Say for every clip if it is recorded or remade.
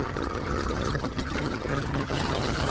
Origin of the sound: remade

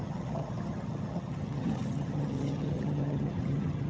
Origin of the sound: remade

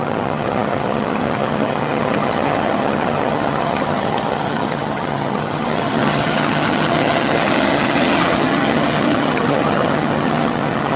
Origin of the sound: remade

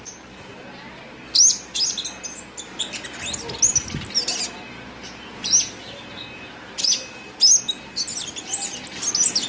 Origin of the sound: recorded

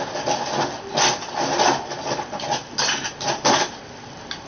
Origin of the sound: recorded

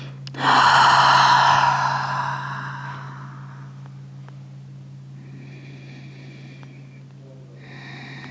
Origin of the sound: recorded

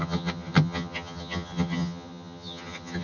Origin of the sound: remade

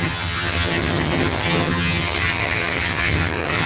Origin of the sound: remade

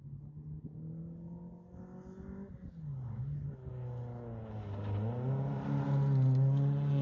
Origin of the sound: recorded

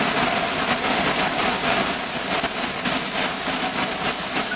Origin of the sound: recorded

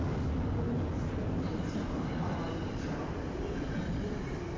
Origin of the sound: recorded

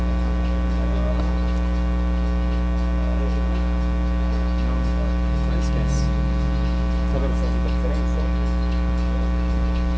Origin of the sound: recorded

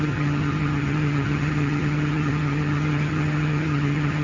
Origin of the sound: remade